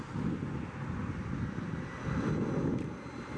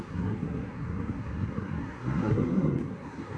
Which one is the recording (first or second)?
first